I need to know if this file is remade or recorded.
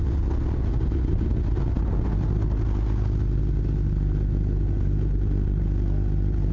recorded